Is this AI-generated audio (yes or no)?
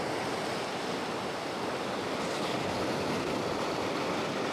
no